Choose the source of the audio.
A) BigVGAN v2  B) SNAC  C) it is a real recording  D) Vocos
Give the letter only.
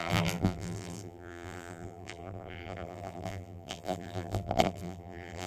A